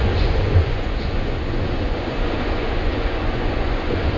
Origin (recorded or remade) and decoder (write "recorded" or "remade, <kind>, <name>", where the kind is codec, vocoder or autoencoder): remade, vocoder, Vocos